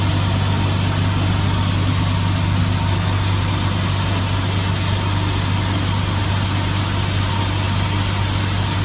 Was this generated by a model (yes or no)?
no